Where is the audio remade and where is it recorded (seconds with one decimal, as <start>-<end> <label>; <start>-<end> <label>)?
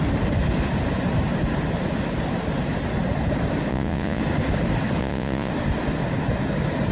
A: 0.0-3.7 recorded; 3.7-4.2 remade; 4.2-5.0 recorded; 5.0-5.5 remade; 5.5-6.9 recorded